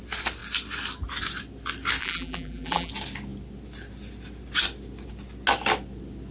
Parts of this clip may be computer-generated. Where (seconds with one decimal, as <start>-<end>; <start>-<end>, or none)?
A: 2.0-2.9